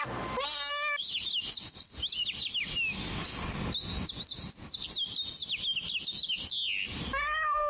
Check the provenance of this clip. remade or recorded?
recorded